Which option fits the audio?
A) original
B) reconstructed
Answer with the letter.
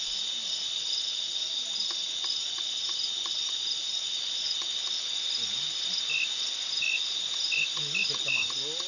A